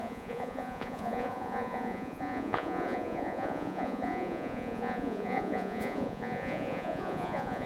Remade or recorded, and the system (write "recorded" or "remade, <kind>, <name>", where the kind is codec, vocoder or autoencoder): remade, vocoder, Vocos